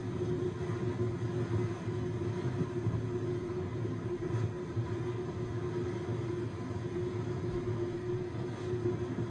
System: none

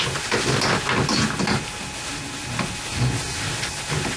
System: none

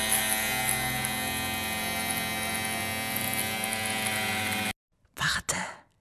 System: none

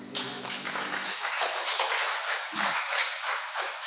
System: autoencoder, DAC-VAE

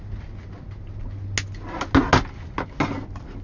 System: none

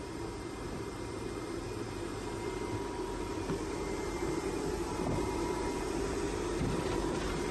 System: vocoder, BigVGAN v2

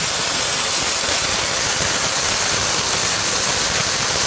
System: none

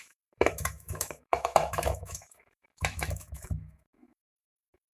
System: autoencoder, DAC-VAE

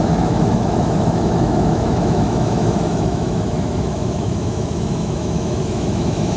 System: autoencoder, DAC-VAE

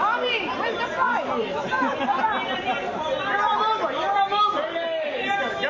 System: none